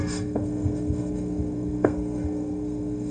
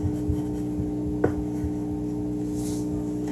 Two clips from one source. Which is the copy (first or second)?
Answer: first